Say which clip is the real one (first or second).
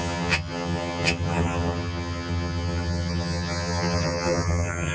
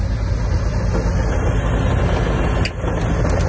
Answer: second